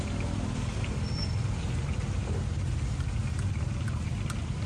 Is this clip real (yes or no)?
yes